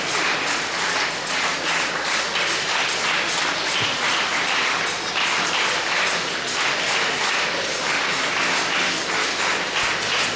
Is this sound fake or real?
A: real